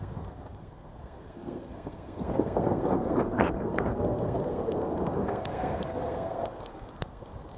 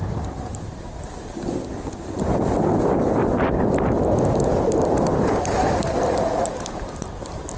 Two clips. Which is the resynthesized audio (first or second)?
first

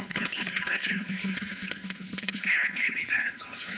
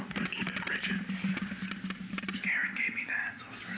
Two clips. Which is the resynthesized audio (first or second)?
first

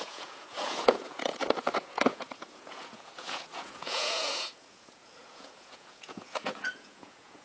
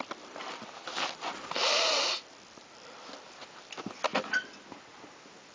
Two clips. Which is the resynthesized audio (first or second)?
first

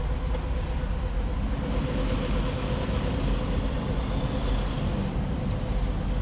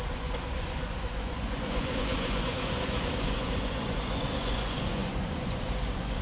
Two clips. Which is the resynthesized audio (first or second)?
second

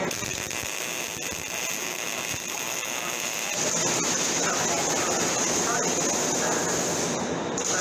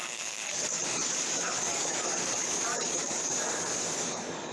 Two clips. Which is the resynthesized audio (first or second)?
second